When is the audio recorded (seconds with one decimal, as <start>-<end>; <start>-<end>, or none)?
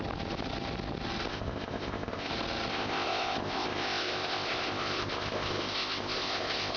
0.0-1.3; 2.3-2.7